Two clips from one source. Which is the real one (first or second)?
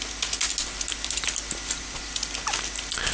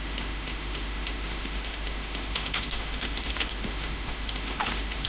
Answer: first